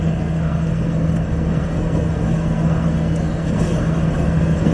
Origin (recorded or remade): remade